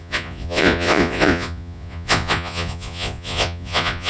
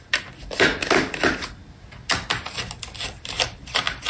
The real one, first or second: second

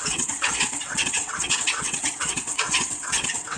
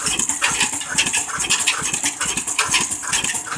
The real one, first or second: second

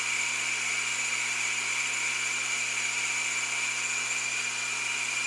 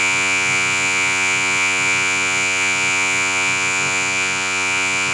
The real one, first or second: first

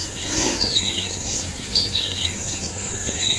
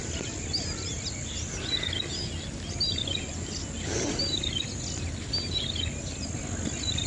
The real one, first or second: second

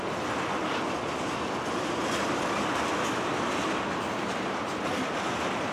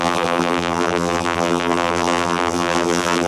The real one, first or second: first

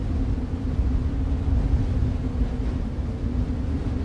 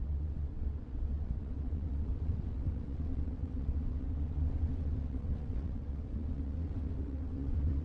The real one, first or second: first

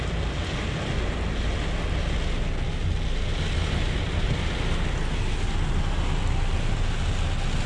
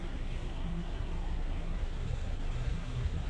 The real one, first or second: first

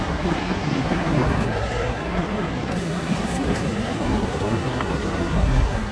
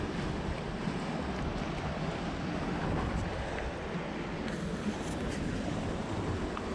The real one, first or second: second